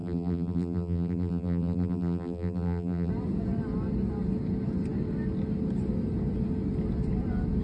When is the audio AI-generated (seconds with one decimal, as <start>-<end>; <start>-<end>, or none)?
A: 0.0-3.1